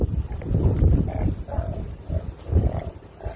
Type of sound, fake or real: real